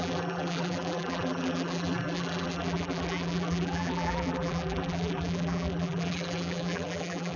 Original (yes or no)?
no